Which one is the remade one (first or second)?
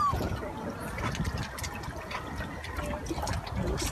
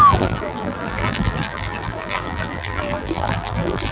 second